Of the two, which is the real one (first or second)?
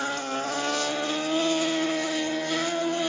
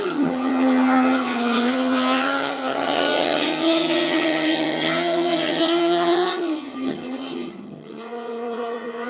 first